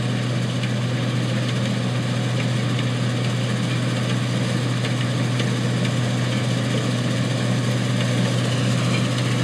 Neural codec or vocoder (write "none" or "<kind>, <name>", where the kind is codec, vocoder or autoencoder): none